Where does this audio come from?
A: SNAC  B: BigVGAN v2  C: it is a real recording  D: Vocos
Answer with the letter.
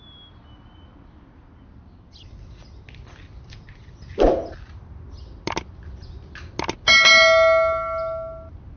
C